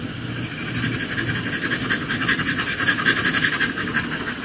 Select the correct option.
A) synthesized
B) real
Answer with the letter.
B